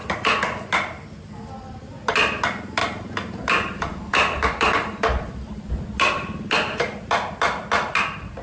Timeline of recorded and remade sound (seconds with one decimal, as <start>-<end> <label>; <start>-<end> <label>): 0.0-2.8 recorded; 2.8-5.7 remade; 5.7-8.4 recorded